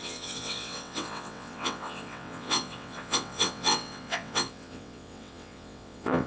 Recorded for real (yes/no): no